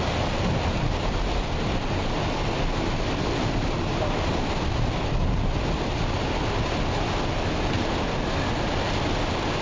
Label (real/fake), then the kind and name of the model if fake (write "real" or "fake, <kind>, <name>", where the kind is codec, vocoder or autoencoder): real